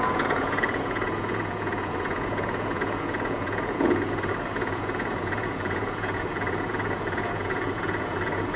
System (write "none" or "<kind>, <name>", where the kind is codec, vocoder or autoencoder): vocoder, Vocos